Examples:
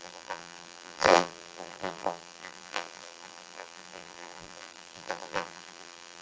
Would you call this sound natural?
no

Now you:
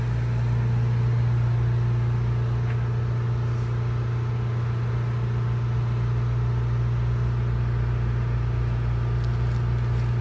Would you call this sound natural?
yes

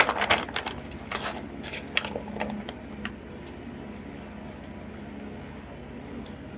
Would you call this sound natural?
yes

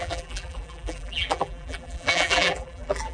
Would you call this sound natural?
no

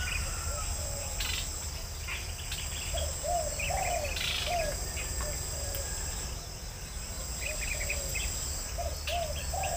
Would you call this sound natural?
yes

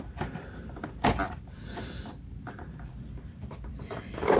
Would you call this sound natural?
no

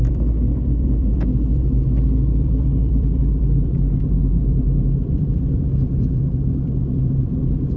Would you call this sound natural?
no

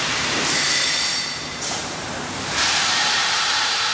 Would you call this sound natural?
no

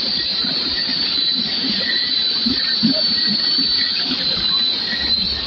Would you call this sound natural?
no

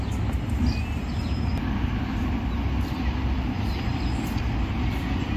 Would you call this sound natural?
yes